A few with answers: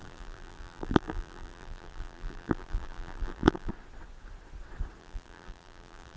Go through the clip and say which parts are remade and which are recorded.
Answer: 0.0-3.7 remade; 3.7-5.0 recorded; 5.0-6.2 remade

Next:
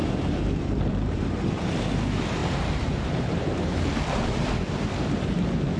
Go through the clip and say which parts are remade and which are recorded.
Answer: 0.0-1.6 remade; 1.6-2.4 recorded; 2.4-4.5 remade; 4.5-5.8 recorded

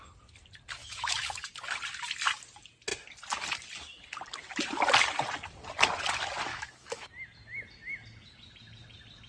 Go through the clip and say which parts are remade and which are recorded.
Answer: 0.0-0.8 recorded; 0.8-1.5 remade; 1.5-6.5 recorded; 6.5-7.1 remade; 7.1-9.3 recorded